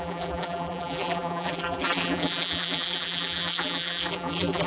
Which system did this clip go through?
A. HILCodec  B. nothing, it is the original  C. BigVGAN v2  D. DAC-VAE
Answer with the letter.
C